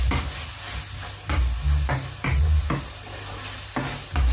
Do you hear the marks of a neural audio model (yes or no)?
no